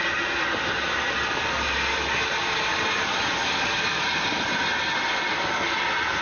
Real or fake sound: real